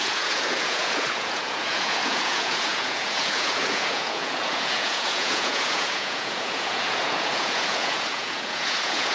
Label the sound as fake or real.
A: fake